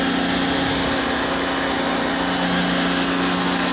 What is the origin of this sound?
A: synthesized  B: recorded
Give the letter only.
B